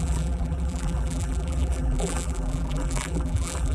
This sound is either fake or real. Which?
fake